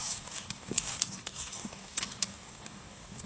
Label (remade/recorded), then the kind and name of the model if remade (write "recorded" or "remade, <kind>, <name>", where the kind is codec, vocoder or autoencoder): remade, codec, DAC